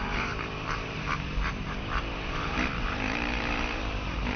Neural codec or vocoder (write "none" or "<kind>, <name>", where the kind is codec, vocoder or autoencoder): vocoder, BigVGAN v2